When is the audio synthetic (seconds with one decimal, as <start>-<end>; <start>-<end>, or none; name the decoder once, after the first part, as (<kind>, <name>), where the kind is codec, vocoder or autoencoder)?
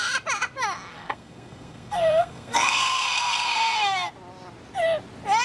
0.9-4.1 (codec, SNAC)